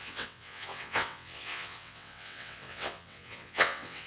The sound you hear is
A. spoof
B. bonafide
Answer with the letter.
A